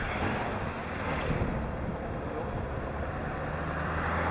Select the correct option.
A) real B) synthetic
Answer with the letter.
A